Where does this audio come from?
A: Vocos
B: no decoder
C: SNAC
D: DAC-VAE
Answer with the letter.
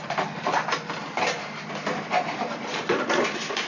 B